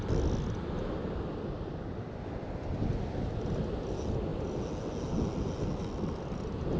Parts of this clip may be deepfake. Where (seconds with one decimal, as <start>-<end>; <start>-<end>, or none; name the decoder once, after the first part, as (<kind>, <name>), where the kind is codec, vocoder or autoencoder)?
none